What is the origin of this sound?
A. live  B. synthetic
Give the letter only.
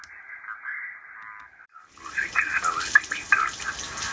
A